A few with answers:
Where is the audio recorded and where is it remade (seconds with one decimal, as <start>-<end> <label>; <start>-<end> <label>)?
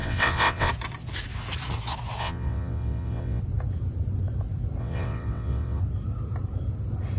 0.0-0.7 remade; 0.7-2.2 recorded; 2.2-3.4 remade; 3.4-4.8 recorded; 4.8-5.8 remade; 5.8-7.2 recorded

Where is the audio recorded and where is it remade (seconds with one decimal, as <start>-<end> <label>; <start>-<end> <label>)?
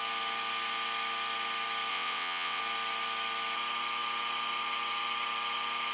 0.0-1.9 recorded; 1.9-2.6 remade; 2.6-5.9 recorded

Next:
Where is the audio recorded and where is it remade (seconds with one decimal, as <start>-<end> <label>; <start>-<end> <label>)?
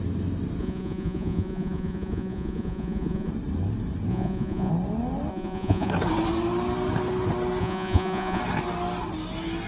0.0-0.6 recorded; 0.6-3.3 remade; 3.3-4.1 recorded; 4.1-4.7 remade; 4.7-5.3 recorded; 5.3-5.9 remade; 5.9-7.6 recorded; 7.6-8.4 remade; 8.4-9.7 recorded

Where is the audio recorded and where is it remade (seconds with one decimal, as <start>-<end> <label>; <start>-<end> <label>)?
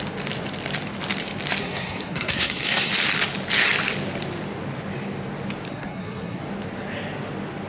0.0-1.6 recorded; 1.6-2.9 remade; 2.9-5.7 recorded; 5.7-6.4 remade; 6.4-7.7 recorded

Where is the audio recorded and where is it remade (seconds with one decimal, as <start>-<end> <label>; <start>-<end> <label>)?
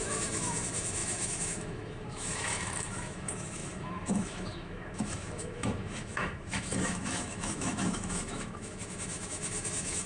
0.0-10.1 remade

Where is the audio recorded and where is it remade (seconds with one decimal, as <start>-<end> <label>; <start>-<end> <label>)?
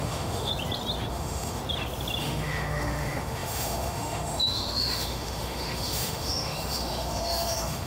0.0-0.5 remade; 0.5-1.1 recorded; 1.1-1.6 remade; 1.6-2.2 recorded; 2.2-7.9 remade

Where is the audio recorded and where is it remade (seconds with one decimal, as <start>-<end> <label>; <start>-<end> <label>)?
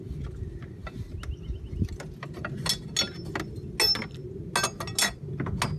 0.0-5.8 recorded